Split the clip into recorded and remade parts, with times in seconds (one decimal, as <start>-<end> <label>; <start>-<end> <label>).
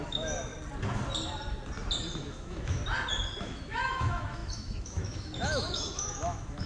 0.0-0.5 remade; 0.5-2.2 recorded; 2.2-2.8 remade; 2.8-3.4 recorded; 3.4-6.7 remade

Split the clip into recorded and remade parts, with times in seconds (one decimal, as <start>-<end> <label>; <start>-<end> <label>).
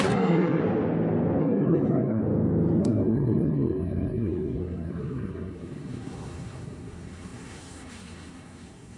0.0-0.6 remade; 0.6-1.4 recorded; 1.4-2.2 remade; 2.2-2.8 recorded; 2.8-9.0 remade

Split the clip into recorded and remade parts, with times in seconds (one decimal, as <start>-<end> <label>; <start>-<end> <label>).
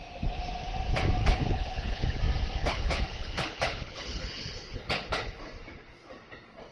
0.0-1.2 recorded; 1.2-2.2 remade; 2.2-2.6 recorded; 2.6-5.4 remade; 5.4-6.7 recorded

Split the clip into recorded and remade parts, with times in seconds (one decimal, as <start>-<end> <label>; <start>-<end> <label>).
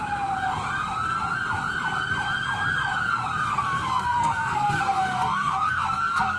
0.0-3.5 recorded; 3.5-6.4 remade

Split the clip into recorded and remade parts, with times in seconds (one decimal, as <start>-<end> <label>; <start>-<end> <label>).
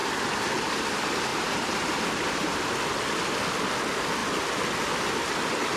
0.0-0.5 remade; 0.5-1.3 recorded; 1.3-2.5 remade; 2.5-5.8 recorded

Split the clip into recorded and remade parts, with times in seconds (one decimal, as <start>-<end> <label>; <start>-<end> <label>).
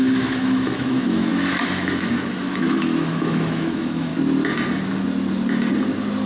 0.0-4.1 remade; 4.1-6.3 recorded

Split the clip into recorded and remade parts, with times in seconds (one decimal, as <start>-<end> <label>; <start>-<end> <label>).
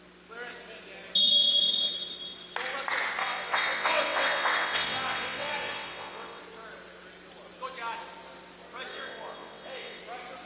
0.0-3.2 recorded; 3.2-6.4 remade; 6.4-8.9 recorded; 8.9-10.0 remade; 10.0-10.5 recorded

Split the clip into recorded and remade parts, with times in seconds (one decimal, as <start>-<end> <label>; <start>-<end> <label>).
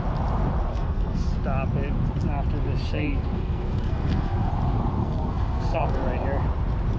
0.0-0.7 recorded; 0.7-1.3 remade; 1.3-2.9 recorded; 2.9-4.5 remade; 4.5-5.0 recorded; 5.0-6.0 remade; 6.0-7.0 recorded